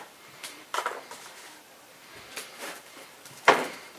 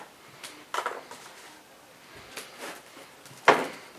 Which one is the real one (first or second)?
second